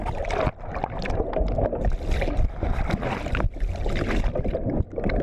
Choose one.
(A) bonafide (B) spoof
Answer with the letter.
A